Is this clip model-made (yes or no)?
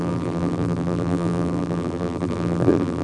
yes